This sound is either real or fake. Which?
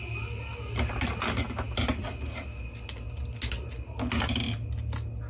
real